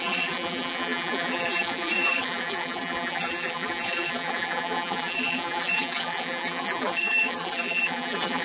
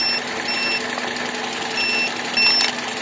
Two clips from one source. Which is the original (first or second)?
second